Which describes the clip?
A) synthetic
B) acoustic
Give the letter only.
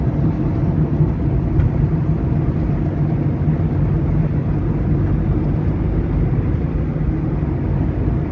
B